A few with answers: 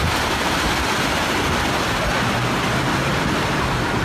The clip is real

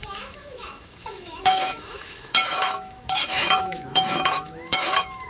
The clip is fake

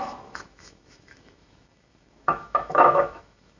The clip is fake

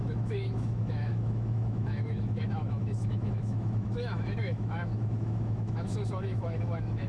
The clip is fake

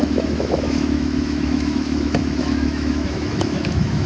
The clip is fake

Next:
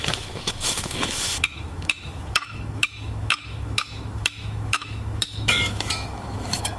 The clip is fake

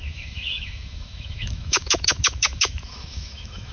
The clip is fake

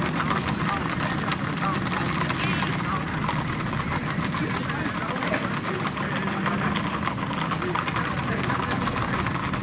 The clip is real